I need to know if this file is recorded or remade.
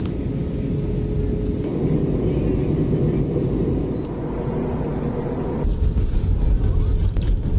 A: recorded